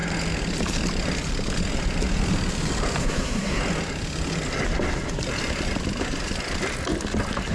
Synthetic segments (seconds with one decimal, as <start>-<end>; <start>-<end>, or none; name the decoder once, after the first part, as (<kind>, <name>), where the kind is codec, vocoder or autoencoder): 3.0-3.6 (codec, SNAC)